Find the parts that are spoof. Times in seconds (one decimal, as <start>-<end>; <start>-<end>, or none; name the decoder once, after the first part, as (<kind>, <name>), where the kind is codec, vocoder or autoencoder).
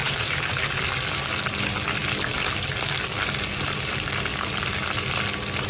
0.0-0.6 (vocoder, BigVGAN v2)